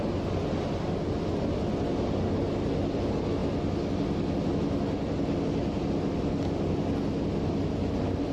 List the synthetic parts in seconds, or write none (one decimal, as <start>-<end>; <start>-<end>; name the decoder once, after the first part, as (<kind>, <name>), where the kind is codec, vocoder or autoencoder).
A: none